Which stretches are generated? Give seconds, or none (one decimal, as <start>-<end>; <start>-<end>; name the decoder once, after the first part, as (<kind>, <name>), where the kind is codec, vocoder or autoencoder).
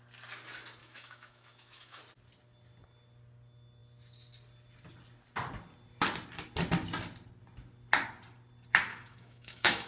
0.8-2.0 (autoencoder, DAC-VAE); 8.9-9.9